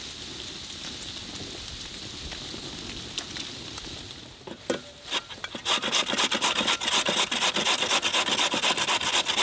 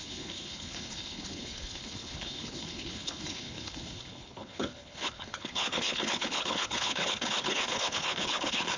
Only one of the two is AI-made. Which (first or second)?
second